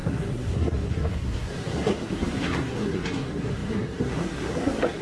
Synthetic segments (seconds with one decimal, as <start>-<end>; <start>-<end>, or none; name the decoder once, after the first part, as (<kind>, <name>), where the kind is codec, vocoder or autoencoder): 0.0-5.0 (codec, SNAC)